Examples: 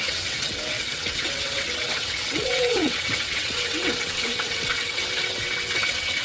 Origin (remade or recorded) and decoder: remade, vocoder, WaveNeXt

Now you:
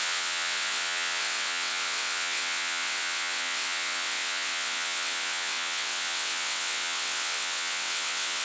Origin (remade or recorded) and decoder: remade, vocoder, WaveNeXt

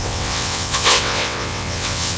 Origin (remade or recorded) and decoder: remade, vocoder, WaveNeXt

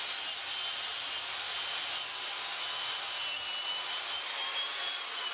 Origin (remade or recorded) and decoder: recorded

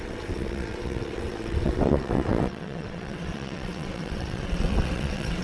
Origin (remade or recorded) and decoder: remade, vocoder, WaveNeXt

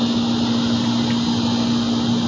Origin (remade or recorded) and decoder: recorded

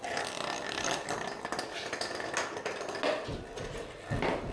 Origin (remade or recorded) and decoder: recorded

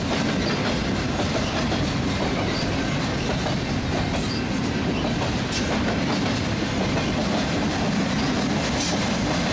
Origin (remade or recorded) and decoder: recorded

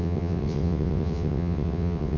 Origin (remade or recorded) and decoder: remade, vocoder, WaveNeXt